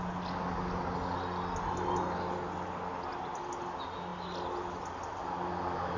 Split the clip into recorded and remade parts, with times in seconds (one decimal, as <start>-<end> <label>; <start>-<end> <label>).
0.0-6.0 recorded